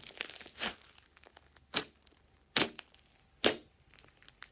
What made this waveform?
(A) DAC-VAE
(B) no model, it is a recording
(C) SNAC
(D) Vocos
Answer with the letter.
B